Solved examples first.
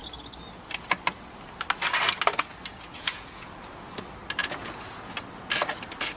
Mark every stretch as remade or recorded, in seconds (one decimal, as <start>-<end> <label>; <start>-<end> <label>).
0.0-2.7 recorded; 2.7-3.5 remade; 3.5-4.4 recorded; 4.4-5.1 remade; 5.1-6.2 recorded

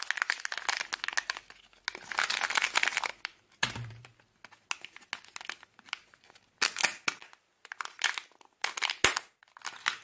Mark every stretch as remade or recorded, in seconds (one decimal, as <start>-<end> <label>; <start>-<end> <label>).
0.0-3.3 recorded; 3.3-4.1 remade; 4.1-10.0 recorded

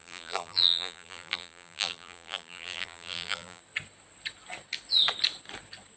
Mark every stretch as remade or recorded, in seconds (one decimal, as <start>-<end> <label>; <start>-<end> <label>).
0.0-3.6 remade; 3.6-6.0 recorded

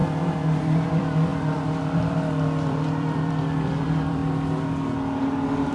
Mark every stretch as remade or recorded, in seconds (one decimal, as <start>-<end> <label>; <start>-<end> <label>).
0.0-0.6 recorded; 0.6-4.2 remade; 4.2-5.7 recorded

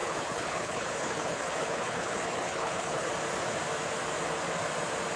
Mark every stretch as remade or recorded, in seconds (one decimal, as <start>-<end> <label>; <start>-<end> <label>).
0.0-3.1 remade; 3.1-5.2 recorded

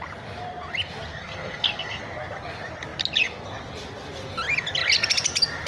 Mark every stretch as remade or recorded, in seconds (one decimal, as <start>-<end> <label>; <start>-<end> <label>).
0.0-1.1 recorded; 1.1-2.0 remade; 2.0-5.7 recorded